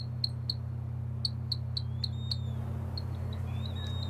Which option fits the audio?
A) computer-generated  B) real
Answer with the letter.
B